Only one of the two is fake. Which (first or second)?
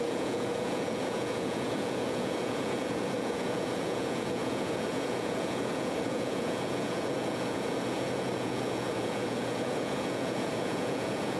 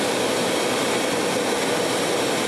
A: first